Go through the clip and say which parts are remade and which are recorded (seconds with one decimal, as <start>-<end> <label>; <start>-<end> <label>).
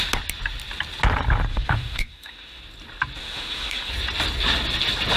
0.0-1.5 recorded; 1.5-2.6 remade; 2.6-3.2 recorded; 3.2-3.9 remade; 3.9-5.2 recorded